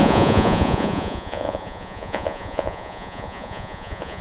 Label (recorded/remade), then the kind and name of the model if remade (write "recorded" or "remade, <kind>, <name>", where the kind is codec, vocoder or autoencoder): remade, vocoder, Vocos